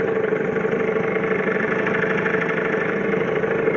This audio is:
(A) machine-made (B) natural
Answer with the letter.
B